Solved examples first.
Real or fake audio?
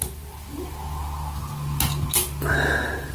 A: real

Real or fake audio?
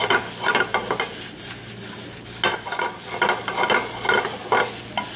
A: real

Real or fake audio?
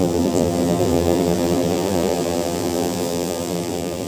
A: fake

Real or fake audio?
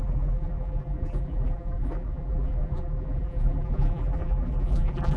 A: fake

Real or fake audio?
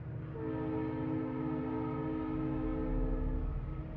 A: real